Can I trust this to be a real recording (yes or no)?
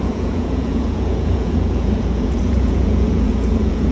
no